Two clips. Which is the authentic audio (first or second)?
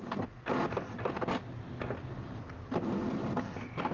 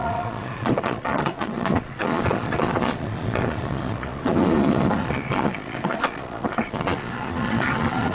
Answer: first